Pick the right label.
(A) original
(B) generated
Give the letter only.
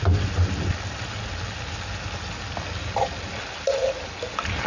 A